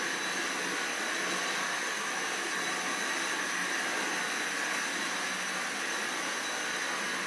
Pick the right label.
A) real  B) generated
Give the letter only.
A